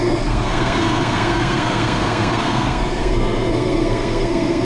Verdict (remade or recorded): remade